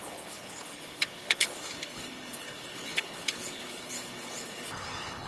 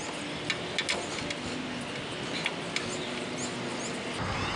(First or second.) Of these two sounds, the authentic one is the second